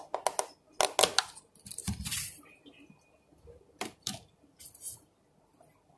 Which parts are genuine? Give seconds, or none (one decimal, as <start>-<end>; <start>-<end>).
0.0-1.8; 5.4-6.0